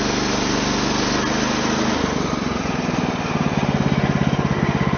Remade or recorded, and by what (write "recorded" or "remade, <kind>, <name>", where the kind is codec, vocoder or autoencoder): recorded